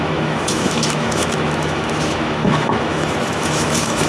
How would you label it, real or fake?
fake